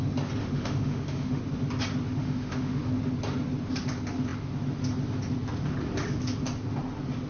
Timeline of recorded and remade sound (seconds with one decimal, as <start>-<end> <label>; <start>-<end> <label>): 0.0-0.4 recorded; 0.4-1.4 remade; 1.4-2.2 recorded; 2.2-2.8 remade; 2.8-7.3 recorded